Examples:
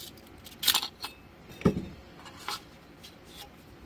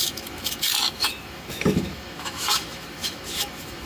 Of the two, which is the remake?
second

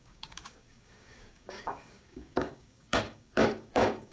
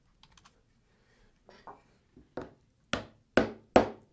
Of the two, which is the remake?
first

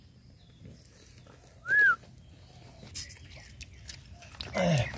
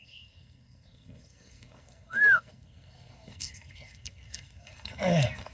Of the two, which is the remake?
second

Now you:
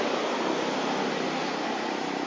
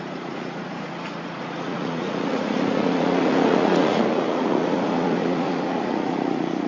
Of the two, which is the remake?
second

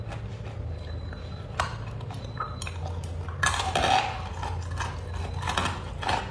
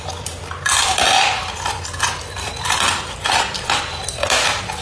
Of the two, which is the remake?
second